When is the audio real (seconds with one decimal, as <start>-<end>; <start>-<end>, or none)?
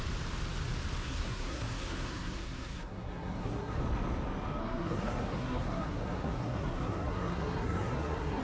0.0-1.0; 3.8-4.6